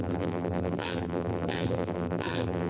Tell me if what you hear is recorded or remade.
remade